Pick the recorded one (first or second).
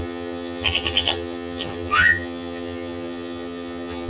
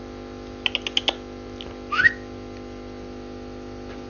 second